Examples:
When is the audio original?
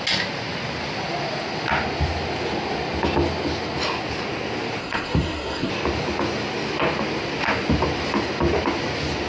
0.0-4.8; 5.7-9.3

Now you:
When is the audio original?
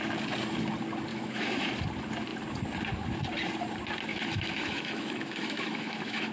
0.0-1.1; 1.7-4.1